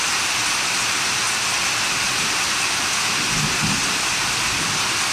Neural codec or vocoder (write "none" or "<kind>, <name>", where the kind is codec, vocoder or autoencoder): none